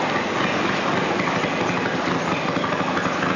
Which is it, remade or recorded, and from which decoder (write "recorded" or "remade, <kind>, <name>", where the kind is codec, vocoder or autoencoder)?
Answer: recorded